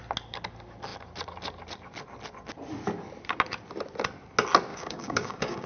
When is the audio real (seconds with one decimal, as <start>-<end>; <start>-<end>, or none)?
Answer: 0.0-4.7